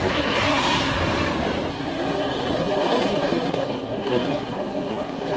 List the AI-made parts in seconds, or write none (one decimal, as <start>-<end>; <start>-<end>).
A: 0.0-0.8; 1.7-5.4